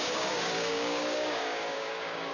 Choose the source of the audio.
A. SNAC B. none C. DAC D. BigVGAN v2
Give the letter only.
C